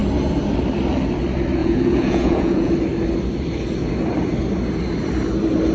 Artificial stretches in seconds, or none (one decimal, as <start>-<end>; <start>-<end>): 1.6-2.7